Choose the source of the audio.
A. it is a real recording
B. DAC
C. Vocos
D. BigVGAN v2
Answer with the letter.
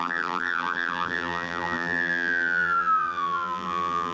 D